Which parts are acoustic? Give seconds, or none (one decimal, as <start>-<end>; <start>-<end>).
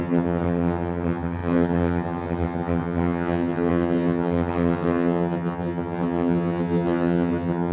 none